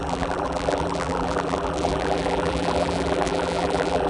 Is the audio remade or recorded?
remade